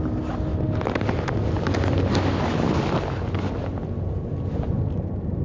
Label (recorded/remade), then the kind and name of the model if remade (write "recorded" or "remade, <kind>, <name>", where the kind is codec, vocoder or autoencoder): recorded